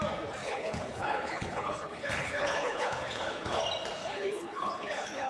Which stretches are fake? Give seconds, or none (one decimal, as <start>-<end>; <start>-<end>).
0.4-3.6; 4.0-5.3

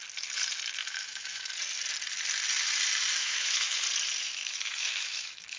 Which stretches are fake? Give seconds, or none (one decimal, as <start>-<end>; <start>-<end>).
0.8-1.5; 3.2-3.8; 4.2-5.6

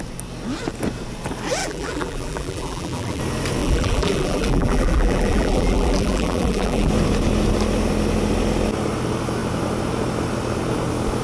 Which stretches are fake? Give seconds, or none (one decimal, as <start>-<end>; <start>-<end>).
1.6-3.2; 3.6-6.9

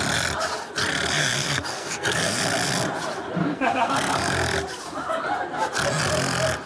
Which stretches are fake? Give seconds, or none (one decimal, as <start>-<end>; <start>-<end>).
1.2-2.4; 3.4-4.2

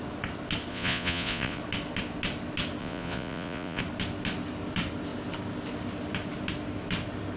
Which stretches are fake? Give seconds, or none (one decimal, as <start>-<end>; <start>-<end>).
0.7-1.6; 2.8-3.8